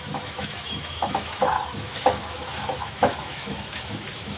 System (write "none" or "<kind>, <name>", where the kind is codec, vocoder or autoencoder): autoencoder, DAC-VAE